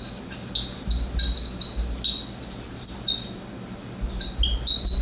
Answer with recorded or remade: recorded